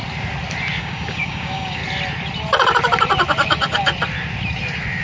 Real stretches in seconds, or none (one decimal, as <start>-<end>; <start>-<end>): 0.0-0.8; 1.8-5.0